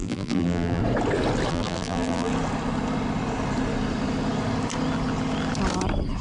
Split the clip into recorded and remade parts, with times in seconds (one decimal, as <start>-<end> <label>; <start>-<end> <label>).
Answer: 0.0-0.8 remade; 0.8-1.5 recorded; 1.5-2.3 remade; 2.3-6.2 recorded